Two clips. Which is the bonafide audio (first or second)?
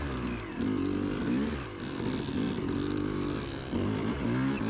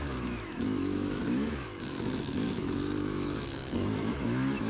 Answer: first